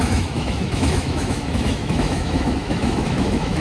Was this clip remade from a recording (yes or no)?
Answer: yes